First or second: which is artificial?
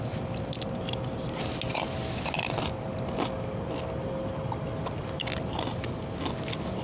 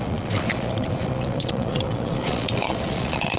second